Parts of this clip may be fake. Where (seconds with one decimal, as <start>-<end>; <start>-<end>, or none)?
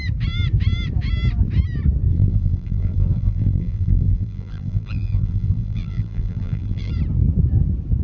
2.1-6.9